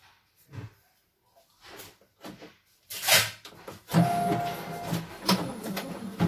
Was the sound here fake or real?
real